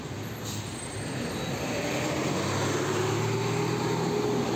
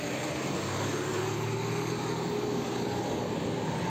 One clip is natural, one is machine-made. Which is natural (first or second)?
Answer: first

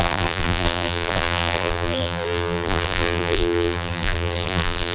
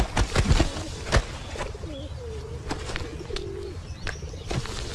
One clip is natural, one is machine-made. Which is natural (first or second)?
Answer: second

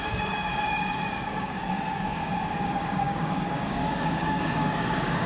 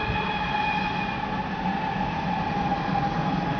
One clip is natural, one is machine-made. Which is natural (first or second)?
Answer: second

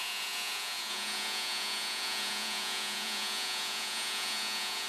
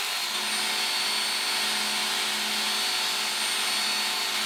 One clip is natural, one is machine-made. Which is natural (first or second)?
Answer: second